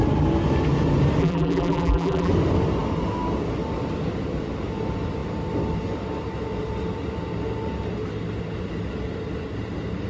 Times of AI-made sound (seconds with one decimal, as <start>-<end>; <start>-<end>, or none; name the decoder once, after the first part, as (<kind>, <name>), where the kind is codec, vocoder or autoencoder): 1.2-2.3 (vocoder, BigVGAN v2)